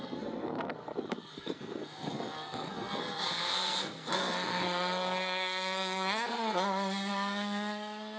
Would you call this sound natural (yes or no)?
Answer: no